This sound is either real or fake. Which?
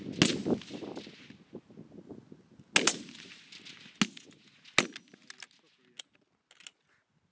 real